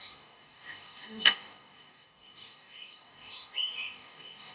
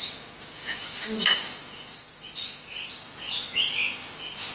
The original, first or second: second